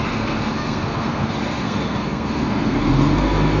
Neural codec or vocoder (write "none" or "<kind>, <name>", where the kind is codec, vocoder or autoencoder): codec, SNAC